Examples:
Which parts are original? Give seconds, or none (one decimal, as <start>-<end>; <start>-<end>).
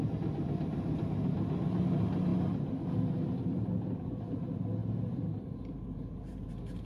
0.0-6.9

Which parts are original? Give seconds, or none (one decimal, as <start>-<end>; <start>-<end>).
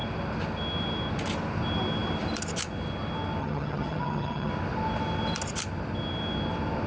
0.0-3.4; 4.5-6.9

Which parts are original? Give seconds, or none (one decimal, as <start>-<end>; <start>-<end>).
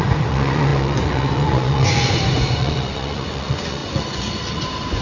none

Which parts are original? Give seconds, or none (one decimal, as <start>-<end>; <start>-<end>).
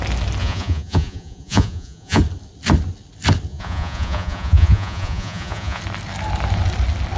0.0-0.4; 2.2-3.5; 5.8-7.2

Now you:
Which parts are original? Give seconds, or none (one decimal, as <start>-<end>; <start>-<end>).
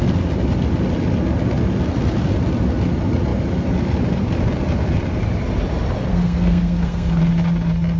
0.0-6.1; 7.2-8.0